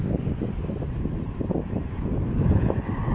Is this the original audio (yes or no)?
yes